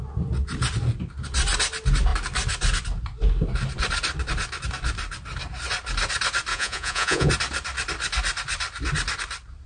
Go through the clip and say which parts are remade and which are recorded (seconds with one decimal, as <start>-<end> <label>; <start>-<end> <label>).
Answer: 0.0-6.5 recorded; 6.5-7.3 remade; 7.3-9.7 recorded